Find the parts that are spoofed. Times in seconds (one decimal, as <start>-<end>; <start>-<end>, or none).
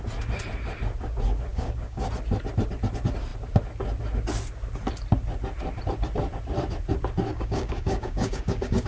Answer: 1.5-2.0; 7.3-8.9